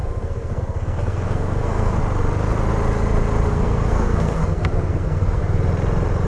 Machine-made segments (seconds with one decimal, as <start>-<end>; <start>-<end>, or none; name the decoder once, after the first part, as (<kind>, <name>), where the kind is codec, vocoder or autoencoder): 0.0-2.0 (codec, SNAC); 3.5-5.4